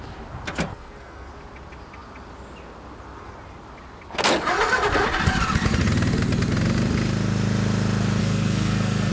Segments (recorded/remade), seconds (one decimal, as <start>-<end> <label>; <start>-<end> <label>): 0.0-0.7 recorded; 0.7-1.3 remade; 1.3-8.2 recorded; 8.2-9.1 remade